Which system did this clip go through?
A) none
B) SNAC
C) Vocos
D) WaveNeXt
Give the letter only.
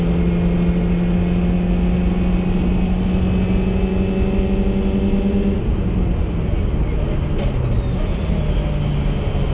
A